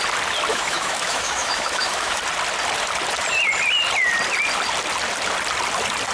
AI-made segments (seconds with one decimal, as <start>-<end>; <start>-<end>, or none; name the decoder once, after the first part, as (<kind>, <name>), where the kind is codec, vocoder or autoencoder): 0.5-2.2 (autoencoder, DAC-VAE)